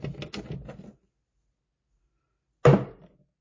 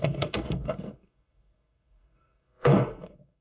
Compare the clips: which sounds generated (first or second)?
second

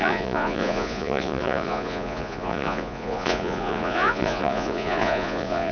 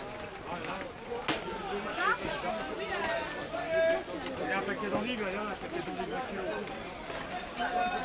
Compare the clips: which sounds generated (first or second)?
first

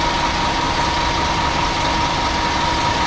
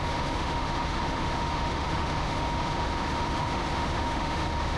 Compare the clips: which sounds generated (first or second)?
second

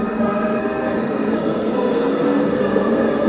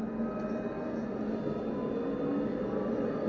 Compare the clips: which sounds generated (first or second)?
first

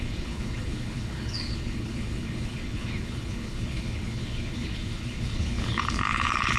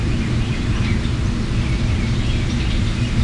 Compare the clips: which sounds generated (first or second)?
first